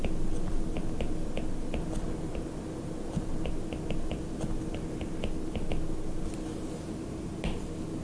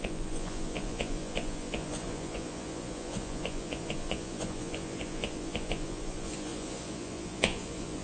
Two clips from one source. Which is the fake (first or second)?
second